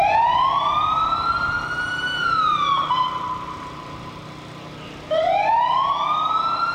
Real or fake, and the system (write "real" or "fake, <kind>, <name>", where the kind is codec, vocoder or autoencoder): real